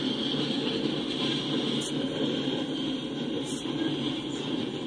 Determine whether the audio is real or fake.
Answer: real